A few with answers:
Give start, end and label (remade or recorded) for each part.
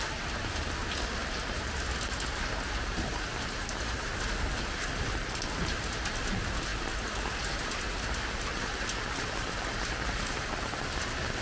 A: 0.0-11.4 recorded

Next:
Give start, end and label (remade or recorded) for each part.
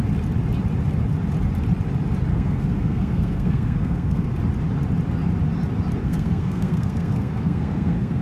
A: 0.0-2.3 recorded; 2.3-4.3 remade; 4.3-6.0 recorded; 6.0-8.2 remade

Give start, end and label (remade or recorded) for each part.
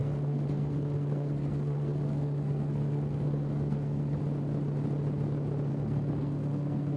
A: 0.0-4.2 remade; 4.2-5.7 recorded; 5.7-7.0 remade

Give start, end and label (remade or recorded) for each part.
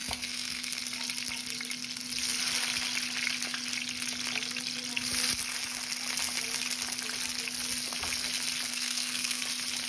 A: 0.0-0.8 remade; 0.8-8.7 recorded; 8.7-9.4 remade; 9.4-9.9 recorded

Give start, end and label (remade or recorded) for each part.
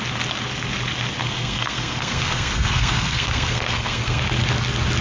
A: 0.0-1.2 recorded; 1.2-4.2 remade; 4.2-5.0 recorded